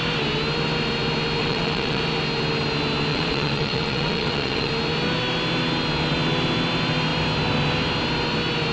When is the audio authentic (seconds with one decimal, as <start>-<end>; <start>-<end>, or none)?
0.0-1.4; 2.0-3.1; 4.7-8.7